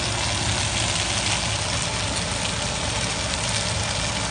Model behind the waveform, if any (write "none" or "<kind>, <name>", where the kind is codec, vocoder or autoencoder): none